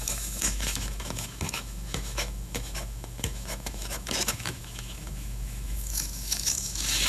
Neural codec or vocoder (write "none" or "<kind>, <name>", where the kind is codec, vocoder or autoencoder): autoencoder, DAC-VAE